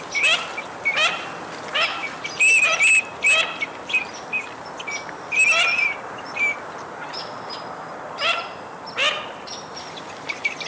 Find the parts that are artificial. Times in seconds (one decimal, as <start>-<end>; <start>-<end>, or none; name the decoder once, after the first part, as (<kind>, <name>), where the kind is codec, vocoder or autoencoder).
none